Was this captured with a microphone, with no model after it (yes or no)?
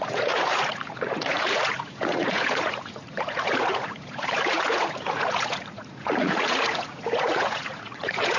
no